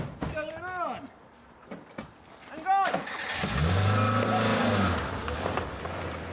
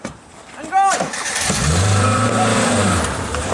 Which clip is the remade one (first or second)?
second